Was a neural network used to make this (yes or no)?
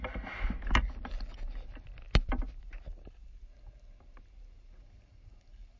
no